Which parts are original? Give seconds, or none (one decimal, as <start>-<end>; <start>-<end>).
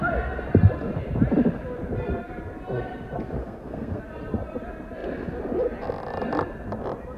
0.0-3.4; 4.0-7.2